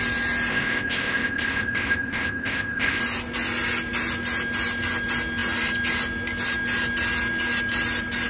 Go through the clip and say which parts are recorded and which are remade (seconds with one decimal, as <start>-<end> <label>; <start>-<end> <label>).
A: 0.0-0.5 recorded; 0.5-3.0 remade; 3.0-8.3 recorded